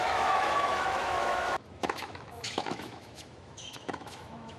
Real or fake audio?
fake